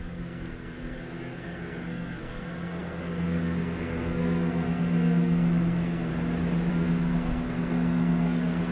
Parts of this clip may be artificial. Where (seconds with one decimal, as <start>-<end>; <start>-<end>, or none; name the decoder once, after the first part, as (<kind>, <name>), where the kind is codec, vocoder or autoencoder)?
0.0-6.1 (codec, SNAC); 6.7-8.7